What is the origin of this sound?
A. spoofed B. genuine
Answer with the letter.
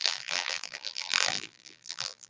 A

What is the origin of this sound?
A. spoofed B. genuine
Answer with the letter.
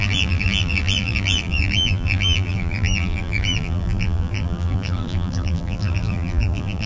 A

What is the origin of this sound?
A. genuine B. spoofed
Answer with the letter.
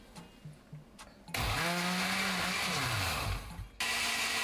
A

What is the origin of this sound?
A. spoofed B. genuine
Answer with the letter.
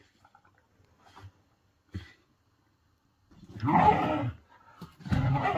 B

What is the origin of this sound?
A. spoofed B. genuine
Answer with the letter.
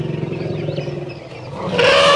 B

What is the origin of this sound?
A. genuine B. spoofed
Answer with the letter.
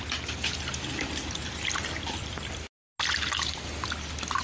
A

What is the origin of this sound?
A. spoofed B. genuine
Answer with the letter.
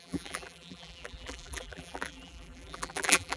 A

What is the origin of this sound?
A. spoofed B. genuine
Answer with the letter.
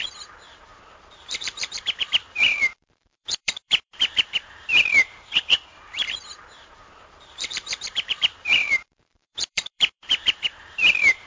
A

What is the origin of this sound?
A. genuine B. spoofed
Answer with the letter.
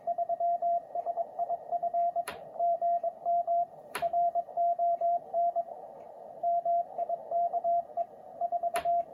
B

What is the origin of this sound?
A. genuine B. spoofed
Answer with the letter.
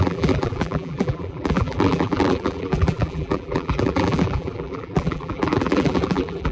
B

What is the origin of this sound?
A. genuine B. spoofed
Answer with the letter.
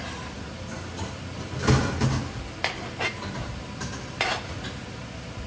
A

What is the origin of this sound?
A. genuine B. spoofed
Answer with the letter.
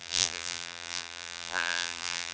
B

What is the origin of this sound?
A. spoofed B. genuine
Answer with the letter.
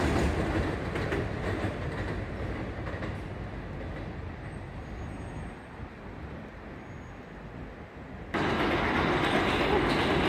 B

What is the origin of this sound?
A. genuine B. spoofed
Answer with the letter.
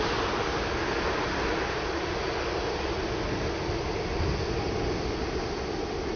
A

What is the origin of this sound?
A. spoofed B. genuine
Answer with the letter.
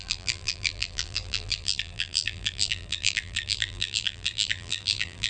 A